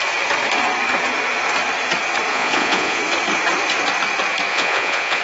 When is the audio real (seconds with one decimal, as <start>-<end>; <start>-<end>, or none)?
0.0-2.3; 3.0-4.5